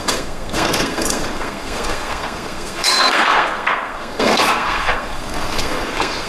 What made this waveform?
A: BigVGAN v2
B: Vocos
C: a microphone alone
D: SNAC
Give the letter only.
D